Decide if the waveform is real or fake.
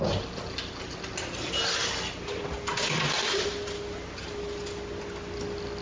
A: real